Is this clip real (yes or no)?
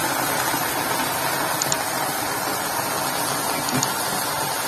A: yes